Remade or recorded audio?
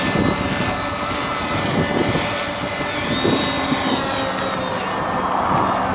recorded